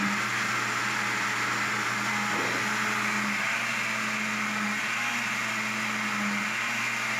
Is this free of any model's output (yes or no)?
yes